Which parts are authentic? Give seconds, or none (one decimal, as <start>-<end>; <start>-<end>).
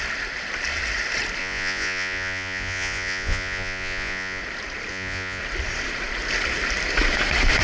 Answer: 0.0-1.4; 4.4-4.9; 5.4-7.6